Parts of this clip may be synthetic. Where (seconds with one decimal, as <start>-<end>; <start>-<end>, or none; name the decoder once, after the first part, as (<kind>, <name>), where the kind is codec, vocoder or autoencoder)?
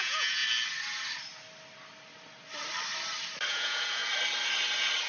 0.0-0.4 (vocoder, Vocos); 3.5-4.0